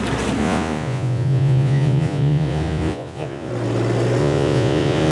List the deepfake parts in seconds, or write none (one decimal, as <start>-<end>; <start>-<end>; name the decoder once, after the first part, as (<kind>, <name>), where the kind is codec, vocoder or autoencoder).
0.4-3.5 (vocoder, Vocos); 4.2-5.1